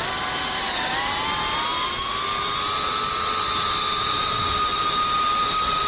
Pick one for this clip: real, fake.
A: fake